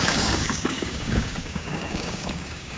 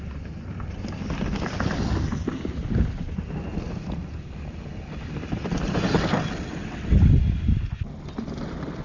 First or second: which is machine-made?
first